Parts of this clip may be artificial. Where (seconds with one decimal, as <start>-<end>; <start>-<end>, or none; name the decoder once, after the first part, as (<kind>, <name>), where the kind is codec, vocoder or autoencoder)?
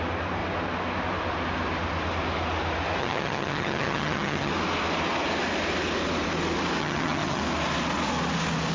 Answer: 3.0-4.5 (vocoder, HiFi-GAN); 6.8-7.4